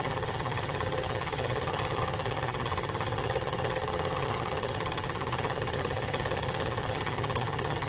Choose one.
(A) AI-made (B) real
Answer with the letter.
A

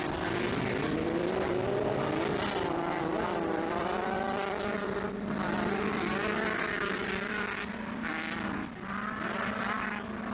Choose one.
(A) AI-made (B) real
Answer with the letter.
B